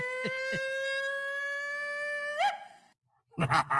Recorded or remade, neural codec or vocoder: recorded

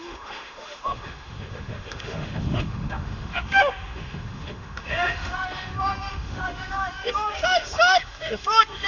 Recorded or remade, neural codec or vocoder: remade, autoencoder, DAC-VAE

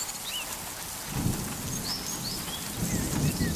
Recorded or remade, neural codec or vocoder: recorded